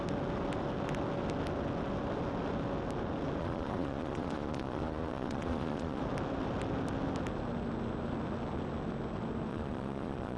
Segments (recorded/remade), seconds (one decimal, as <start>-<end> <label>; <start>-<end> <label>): 0.0-3.4 recorded; 3.4-6.0 remade; 6.0-9.5 recorded; 9.5-10.4 remade